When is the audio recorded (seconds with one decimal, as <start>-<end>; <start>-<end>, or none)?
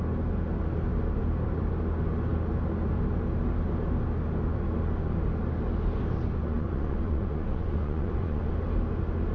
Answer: 0.0-6.4; 8.5-9.3